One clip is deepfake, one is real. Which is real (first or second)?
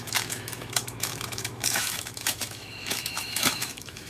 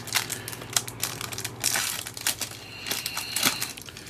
second